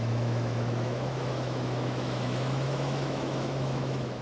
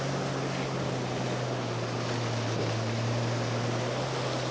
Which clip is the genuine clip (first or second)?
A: second